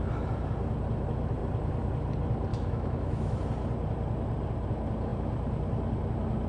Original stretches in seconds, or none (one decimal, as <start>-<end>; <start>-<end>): 0.0-2.5; 3.4-6.5